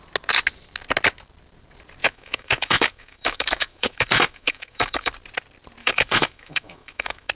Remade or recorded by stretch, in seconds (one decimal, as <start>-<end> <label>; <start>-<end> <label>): 0.0-2.0 recorded; 2.0-5.1 remade; 5.1-5.8 recorded; 5.8-7.3 remade